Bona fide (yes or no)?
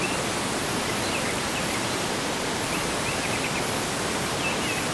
yes